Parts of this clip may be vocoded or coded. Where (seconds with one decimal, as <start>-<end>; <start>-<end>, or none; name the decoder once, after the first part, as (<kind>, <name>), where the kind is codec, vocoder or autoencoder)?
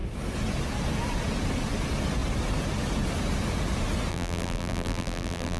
4.1-5.6 (vocoder, BigVGAN v2)